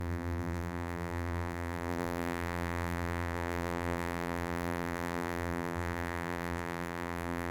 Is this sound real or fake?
fake